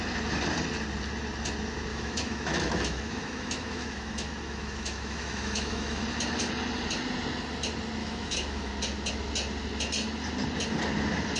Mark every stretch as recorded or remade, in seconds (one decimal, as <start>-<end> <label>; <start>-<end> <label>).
0.0-1.9 recorded; 1.9-6.0 remade; 6.0-8.0 recorded; 8.0-8.7 remade; 8.7-11.4 recorded